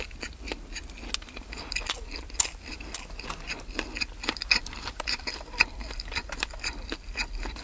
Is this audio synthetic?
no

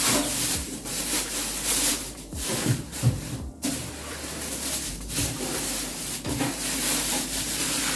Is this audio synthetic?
yes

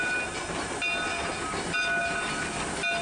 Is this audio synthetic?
no